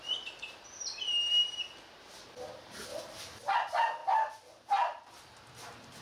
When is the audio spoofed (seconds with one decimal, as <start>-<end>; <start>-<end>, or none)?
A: none

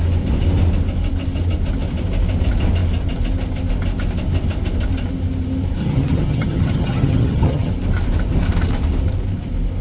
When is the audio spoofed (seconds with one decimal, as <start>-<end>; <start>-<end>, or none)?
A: 5.8-7.7

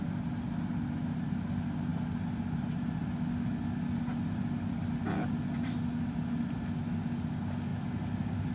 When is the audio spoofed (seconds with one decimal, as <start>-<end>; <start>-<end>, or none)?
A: none

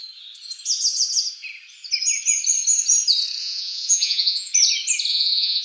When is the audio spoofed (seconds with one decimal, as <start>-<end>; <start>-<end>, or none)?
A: 3.4-4.5; 5.1-5.6

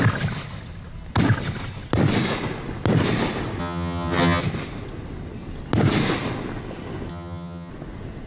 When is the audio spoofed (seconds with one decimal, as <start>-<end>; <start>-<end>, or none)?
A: 3.6-4.4; 7.1-7.7

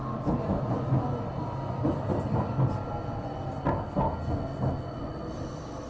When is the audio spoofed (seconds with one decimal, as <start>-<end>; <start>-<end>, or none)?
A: none